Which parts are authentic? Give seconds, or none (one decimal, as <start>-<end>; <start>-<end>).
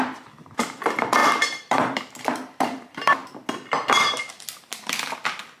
3.2-3.7